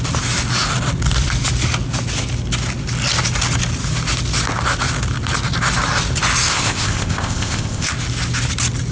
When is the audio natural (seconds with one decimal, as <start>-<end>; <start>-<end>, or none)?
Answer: 0.0-6.5; 7.9-8.9